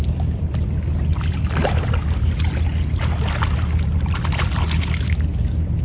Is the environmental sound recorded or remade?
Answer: recorded